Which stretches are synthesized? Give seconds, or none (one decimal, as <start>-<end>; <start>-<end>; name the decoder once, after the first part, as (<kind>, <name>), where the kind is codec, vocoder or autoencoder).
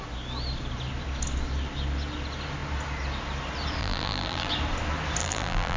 3.8-4.5 (vocoder, BigVGAN v2); 5.2-5.8